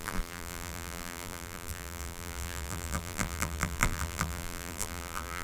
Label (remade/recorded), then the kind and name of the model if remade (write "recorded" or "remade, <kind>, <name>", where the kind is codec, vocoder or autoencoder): remade, vocoder, BigVGAN v2